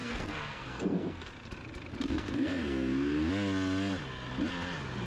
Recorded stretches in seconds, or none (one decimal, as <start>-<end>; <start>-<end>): 1.3-1.9; 3.3-5.1